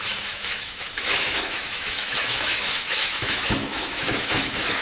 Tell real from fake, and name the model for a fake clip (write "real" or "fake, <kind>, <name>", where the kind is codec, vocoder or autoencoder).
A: fake, autoencoder, DAC-VAE